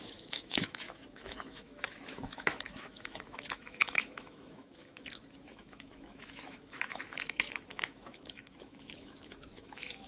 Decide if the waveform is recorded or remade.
remade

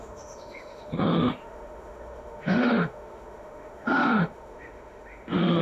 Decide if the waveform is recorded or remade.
remade